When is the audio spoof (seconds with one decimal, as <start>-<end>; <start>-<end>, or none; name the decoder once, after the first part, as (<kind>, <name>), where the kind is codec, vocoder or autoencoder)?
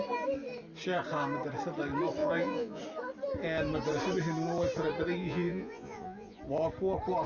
2.2-2.8 (vocoder, Vocos); 5.2-6.4